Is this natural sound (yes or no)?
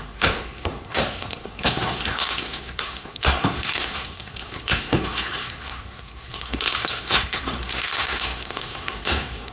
no